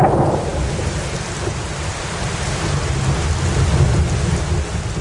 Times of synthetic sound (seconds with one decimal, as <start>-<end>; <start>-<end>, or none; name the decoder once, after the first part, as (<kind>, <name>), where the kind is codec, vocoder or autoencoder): none